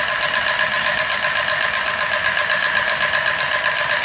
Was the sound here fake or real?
real